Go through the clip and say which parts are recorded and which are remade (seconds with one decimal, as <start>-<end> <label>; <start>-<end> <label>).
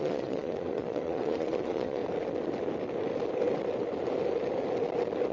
0.0-2.0 remade; 2.0-5.3 recorded